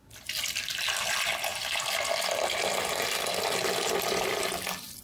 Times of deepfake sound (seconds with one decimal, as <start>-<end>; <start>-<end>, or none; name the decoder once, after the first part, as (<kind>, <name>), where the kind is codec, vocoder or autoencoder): none